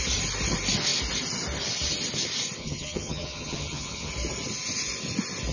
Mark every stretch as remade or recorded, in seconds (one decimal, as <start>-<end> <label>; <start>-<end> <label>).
0.0-2.6 recorded; 2.6-4.1 remade; 4.1-5.5 recorded